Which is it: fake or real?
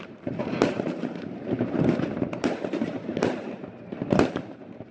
fake